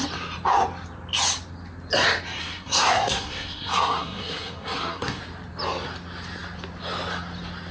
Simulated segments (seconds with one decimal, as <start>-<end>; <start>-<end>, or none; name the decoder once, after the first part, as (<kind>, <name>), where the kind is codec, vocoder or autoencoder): 2.4-5.2 (codec, SNAC)